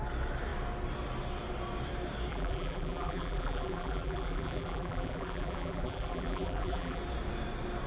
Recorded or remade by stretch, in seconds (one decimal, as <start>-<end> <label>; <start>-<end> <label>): 0.0-2.3 recorded; 2.3-7.0 remade; 7.0-7.9 recorded